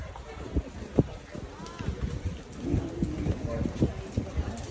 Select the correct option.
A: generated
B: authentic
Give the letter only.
B